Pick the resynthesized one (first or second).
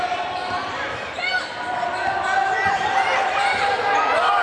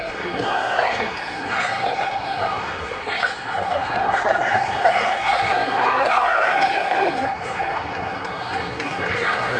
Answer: second